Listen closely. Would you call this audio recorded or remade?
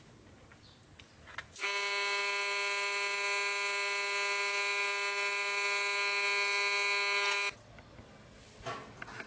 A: recorded